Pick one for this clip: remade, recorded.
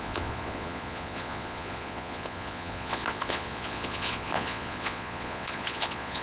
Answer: remade